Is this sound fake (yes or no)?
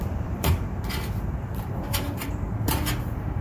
yes